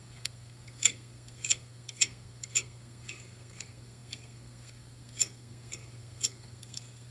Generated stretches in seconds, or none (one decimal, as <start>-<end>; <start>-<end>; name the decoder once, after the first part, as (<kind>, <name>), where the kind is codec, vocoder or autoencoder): 0.0-7.1 (codec, SNAC)